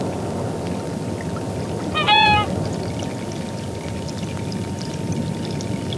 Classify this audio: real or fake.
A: real